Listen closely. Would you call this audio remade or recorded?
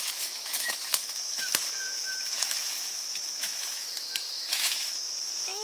remade